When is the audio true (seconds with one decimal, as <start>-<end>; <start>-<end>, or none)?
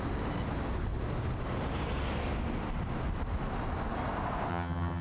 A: 0.0-4.5